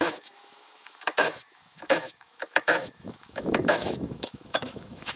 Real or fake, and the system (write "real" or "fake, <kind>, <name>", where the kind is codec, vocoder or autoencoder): fake, autoencoder, DAC-VAE